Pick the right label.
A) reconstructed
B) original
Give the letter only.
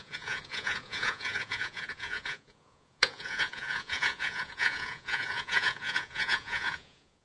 A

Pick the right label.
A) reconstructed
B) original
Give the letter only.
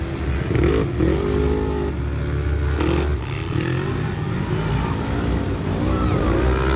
B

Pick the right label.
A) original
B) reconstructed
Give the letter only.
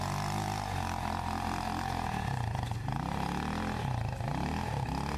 A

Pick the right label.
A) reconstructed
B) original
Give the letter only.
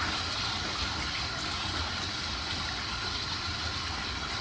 B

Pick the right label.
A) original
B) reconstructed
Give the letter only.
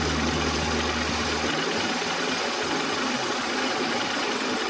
A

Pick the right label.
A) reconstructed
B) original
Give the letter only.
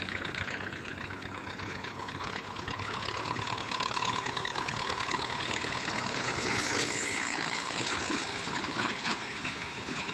A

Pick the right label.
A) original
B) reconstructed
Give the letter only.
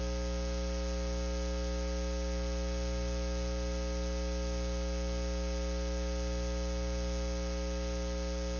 A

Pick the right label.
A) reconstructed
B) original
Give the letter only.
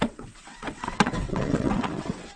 A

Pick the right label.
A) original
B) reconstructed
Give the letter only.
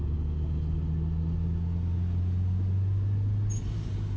A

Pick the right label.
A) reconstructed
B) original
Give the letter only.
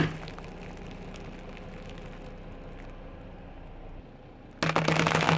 B